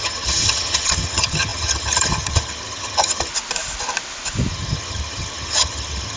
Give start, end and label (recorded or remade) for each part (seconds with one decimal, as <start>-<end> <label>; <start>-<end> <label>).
0.0-3.3 remade; 3.3-4.5 recorded; 4.5-6.2 remade